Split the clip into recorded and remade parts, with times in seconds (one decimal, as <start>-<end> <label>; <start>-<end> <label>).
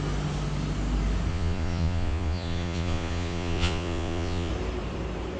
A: 0.0-1.3 recorded; 1.3-4.5 remade; 4.5-5.4 recorded